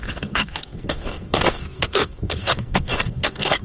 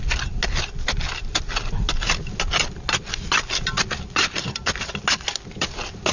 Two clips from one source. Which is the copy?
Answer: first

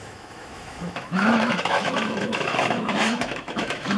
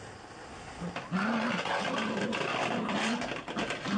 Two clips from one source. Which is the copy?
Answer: first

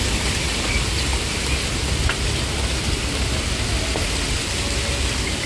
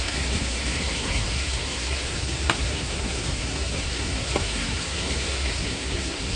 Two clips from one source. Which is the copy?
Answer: second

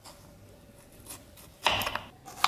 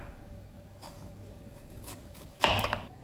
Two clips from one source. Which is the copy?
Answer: second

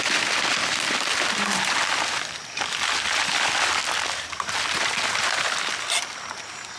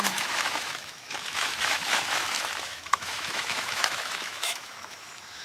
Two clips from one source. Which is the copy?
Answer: second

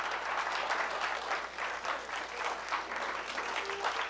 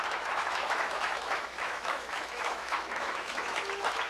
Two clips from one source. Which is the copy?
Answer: second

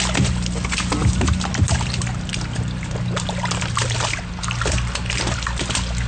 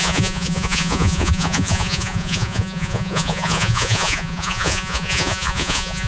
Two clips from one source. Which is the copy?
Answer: second